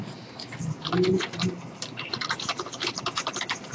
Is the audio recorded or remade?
remade